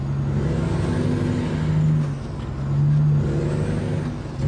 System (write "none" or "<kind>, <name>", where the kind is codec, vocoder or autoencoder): none